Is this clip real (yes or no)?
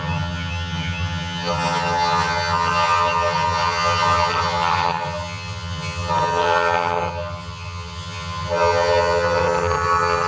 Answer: no